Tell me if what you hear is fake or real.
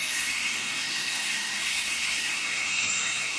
fake